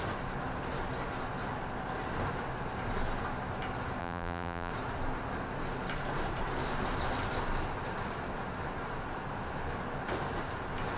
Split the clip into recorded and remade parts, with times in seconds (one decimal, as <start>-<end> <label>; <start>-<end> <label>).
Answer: 0.0-4.0 recorded; 4.0-4.7 remade; 4.7-11.0 recorded